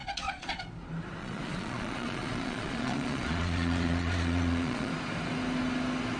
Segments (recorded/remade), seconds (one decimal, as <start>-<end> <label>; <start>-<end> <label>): 0.0-0.6 remade; 0.6-1.2 recorded; 1.2-4.9 remade; 4.9-6.2 recorded